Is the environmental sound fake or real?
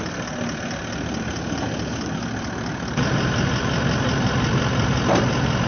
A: real